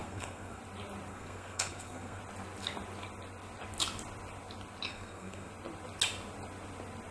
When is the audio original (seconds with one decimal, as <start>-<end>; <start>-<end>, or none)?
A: 0.6-1.1; 2.2-4.9; 5.5-7.1